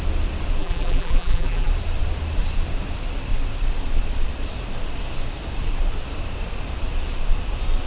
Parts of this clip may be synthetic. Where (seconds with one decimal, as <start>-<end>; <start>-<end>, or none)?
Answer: 0.6-1.7